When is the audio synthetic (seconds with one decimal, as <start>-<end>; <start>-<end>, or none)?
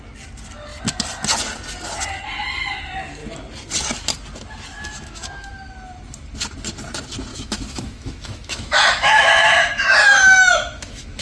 4.7-5.5; 7.3-11.2